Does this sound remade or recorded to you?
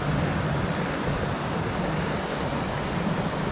recorded